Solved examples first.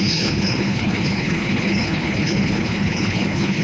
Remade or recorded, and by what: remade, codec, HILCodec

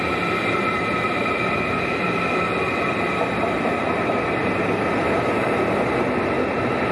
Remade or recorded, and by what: recorded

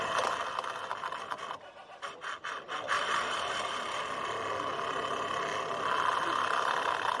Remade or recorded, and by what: recorded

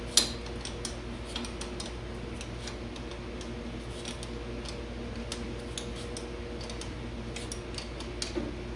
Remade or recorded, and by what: recorded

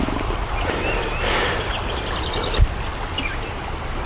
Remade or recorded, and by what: recorded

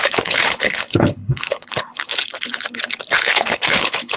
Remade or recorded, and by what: remade, codec, HILCodec